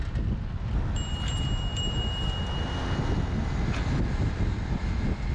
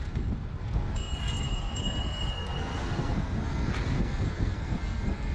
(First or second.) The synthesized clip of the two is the second